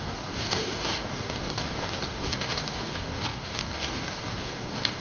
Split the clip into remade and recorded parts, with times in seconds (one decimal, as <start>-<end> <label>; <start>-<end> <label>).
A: 0.0-5.0 remade